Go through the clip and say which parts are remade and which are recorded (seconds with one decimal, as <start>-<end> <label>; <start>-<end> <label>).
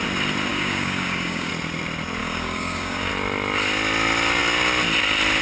0.0-0.5 recorded; 0.5-1.5 remade; 1.5-2.2 recorded; 2.2-3.1 remade; 3.1-5.4 recorded